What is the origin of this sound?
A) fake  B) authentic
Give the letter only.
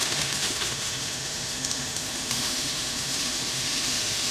A